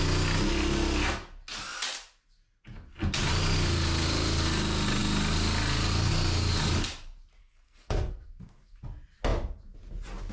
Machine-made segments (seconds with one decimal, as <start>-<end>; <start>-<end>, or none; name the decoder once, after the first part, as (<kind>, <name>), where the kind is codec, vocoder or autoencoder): 7.4-8.8 (codec, SNAC)